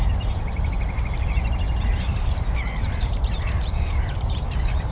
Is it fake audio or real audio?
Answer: fake